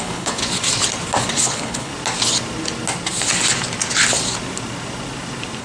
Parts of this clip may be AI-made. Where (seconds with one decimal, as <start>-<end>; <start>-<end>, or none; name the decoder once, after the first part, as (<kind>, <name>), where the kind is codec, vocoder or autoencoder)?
0.0-0.4 (codec, HILCodec); 1.4-1.9